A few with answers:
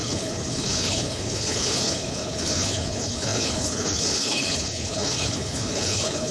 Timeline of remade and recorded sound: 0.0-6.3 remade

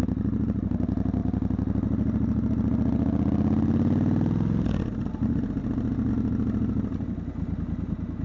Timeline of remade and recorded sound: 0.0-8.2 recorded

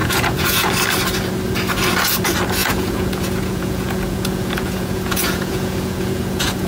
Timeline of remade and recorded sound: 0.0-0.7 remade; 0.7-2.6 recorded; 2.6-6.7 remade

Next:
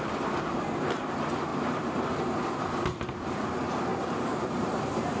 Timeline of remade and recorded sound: 0.0-1.5 recorded; 1.5-2.4 remade; 2.4-3.9 recorded; 3.9-4.7 remade; 4.7-5.2 recorded

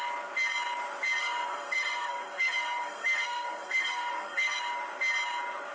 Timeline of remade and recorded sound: 0.0-1.2 recorded; 1.2-4.6 remade; 4.6-5.7 recorded

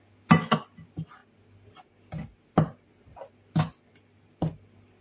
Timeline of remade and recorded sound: 0.0-5.0 recorded

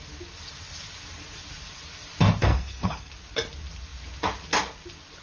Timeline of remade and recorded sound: 0.0-2.4 recorded; 2.4-3.1 remade; 3.1-5.2 recorded

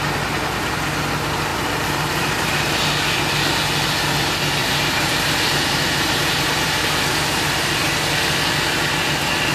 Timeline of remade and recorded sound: 0.0-1.5 recorded; 1.5-2.9 remade; 2.9-4.6 recorded; 4.6-6.9 remade; 6.9-9.5 recorded